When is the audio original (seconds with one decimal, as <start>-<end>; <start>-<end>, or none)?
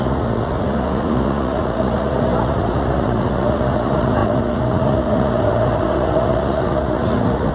none